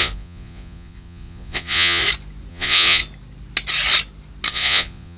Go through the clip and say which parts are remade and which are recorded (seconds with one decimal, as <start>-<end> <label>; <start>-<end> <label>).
0.0-2.0 remade; 2.0-2.5 recorded; 2.5-3.0 remade; 3.0-4.5 recorded; 4.5-5.2 remade